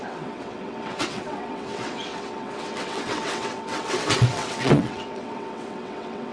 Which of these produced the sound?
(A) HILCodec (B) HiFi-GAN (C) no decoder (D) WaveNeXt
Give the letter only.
D